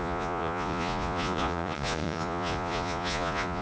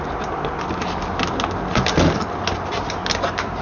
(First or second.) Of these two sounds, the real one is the second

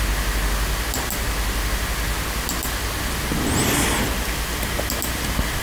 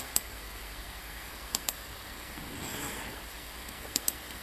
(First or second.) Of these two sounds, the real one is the first